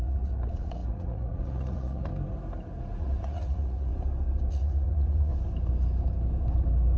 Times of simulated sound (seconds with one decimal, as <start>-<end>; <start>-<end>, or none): 0.0-2.1; 3.0-3.9; 4.5-5.3